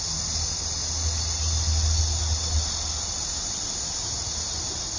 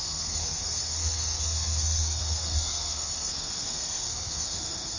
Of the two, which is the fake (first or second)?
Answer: second